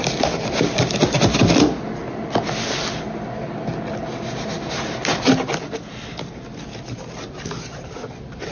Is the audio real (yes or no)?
yes